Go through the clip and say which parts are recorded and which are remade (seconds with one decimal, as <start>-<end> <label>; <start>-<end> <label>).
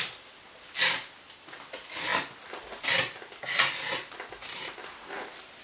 0.0-5.6 recorded